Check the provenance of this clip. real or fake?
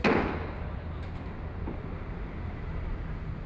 real